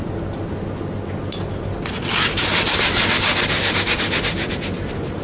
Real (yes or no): yes